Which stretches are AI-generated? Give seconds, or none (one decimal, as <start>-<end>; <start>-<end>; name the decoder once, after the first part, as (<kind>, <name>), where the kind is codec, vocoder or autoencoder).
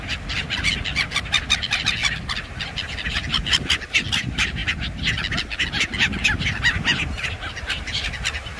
none